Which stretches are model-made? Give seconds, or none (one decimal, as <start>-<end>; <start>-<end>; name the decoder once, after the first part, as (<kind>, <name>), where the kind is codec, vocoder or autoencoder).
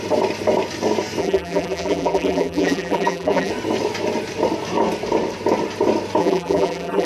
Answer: 1.2-3.5 (vocoder, BigVGAN v2); 6.2-7.1